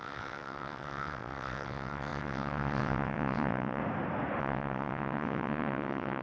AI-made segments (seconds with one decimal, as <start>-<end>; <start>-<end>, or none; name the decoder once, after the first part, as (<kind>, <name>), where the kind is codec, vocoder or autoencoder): 0.0-3.8 (vocoder, WaveNeXt); 4.4-6.2